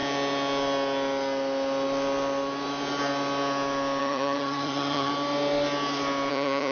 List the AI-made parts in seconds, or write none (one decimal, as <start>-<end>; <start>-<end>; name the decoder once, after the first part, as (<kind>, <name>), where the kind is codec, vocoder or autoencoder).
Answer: 4.0-5.1 (vocoder, HiFi-GAN); 6.3-6.7